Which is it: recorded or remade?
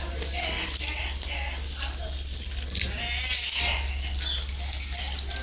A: recorded